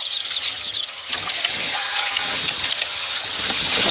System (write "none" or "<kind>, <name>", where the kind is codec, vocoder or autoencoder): vocoder, HiFi-GAN